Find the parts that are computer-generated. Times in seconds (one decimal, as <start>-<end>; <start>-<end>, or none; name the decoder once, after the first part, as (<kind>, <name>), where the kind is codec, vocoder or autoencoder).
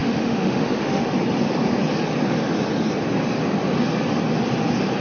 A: 0.0-1.1 (autoencoder, DAC-VAE)